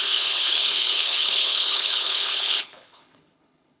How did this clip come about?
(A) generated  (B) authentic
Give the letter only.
A